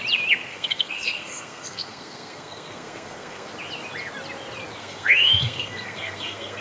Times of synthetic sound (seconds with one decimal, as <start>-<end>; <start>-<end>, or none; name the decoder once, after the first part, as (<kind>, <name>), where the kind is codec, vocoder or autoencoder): 0.5-3.5 (codec, SNAC); 4.8-6.6